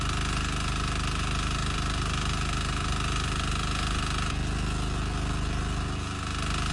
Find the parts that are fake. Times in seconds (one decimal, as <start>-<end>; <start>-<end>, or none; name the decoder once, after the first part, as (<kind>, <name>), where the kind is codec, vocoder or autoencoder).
none